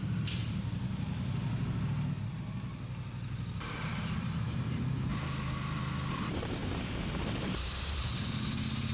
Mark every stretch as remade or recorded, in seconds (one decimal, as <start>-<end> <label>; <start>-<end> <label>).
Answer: 0.0-0.4 remade; 0.4-4.0 recorded; 4.0-5.1 remade; 5.1-6.1 recorded; 6.1-6.6 remade; 6.6-7.2 recorded; 7.2-8.9 remade